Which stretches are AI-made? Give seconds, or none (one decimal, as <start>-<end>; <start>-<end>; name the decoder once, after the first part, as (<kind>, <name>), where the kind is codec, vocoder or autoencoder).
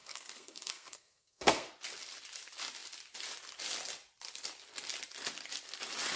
0.0-1.7 (codec, SNAC)